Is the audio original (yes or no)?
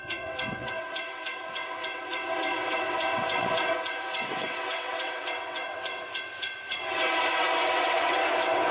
no